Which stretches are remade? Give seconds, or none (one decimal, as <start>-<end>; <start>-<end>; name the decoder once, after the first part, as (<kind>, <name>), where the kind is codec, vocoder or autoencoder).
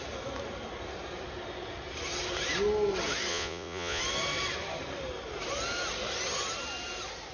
3.3-4.0 (vocoder, Vocos)